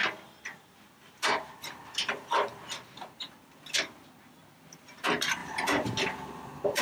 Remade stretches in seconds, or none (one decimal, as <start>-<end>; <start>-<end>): 0.0-0.5; 5.4-6.8